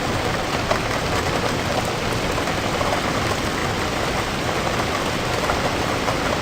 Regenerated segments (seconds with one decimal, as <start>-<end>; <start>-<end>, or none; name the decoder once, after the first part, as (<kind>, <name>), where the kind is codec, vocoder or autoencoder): 3.6-5.3 (vocoder, BigVGAN v2)